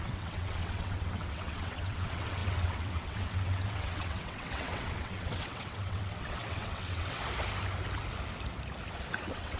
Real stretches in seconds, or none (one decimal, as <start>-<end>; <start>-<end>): 7.2-9.2